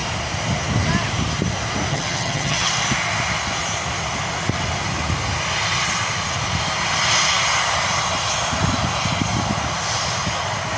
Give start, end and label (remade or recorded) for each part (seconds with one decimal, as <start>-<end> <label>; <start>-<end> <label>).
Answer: 0.0-1.9 recorded; 1.9-2.7 remade; 2.7-10.8 recorded